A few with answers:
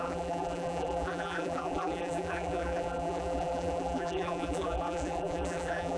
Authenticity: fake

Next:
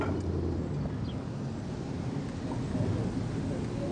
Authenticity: real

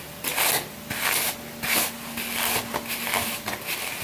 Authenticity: real